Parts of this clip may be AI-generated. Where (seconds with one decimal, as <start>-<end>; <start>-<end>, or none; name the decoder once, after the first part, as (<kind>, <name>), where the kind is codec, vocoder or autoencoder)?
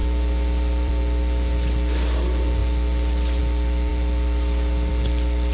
0.0-0.9 (vocoder, BigVGAN v2); 2.6-3.4; 3.9-4.9